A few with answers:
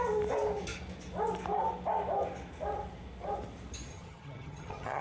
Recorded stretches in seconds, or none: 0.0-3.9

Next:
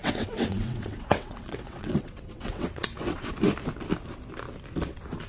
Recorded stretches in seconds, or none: 3.2-5.3